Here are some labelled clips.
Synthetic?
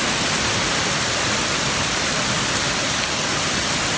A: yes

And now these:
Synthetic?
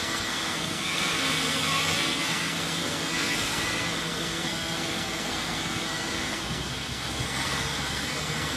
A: yes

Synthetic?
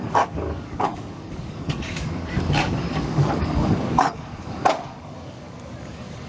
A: yes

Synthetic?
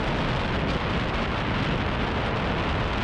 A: no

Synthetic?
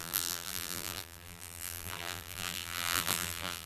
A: yes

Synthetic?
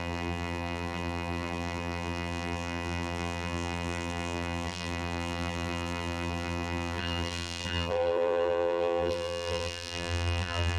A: yes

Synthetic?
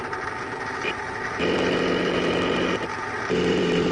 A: yes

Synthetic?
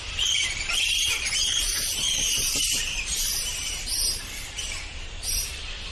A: yes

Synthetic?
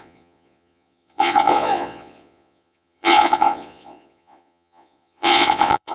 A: yes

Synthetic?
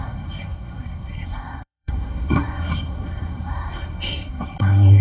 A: yes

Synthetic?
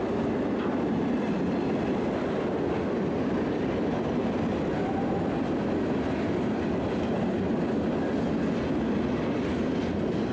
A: no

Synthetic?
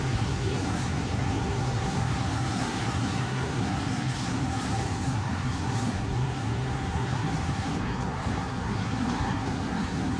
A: yes